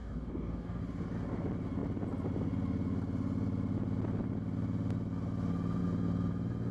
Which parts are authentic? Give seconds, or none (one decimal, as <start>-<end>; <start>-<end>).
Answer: 0.8-6.7